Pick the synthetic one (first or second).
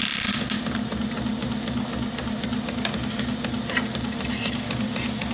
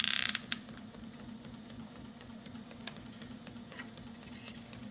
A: second